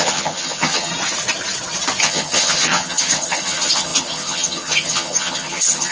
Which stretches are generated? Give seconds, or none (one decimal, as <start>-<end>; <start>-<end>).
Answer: 0.0-0.9; 2.0-5.9